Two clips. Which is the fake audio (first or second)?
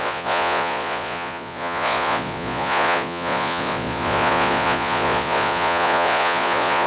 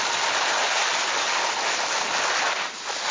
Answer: first